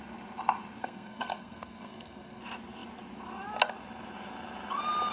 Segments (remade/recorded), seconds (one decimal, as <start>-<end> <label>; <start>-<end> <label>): 0.0-0.8 recorded; 0.8-2.4 remade; 2.4-5.1 recorded